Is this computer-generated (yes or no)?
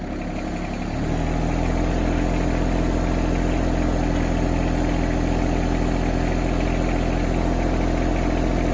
no